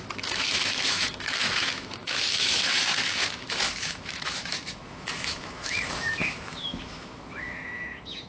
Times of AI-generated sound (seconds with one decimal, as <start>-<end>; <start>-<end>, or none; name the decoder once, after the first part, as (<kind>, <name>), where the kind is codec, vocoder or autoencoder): 0.0-8.3 (autoencoder, DAC-VAE)